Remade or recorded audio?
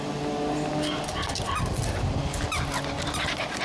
recorded